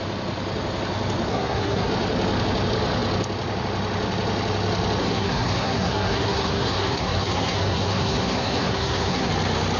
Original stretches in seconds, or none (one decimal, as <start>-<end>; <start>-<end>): 0.0-1.3; 1.9-5.0; 9.3-9.8